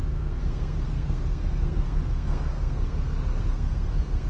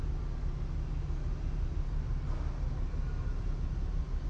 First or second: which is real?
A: second